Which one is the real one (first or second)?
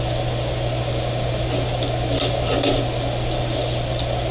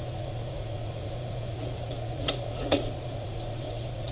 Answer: first